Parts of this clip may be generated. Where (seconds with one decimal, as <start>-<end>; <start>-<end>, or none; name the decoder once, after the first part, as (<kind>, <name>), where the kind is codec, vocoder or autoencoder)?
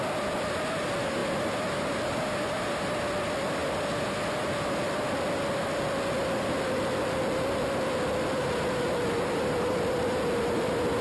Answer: none